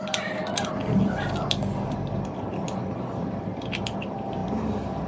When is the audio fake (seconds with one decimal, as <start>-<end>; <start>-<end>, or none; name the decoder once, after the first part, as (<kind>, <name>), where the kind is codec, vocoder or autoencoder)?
none